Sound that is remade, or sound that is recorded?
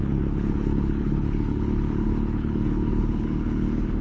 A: remade